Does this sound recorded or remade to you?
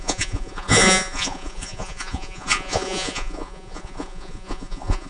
remade